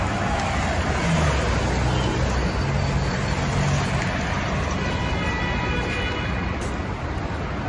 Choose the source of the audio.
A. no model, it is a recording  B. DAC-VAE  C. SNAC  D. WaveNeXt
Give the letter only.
A